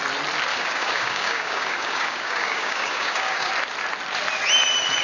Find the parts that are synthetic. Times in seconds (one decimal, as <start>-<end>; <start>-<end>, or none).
0.5-3.5